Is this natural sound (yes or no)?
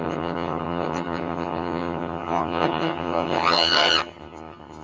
no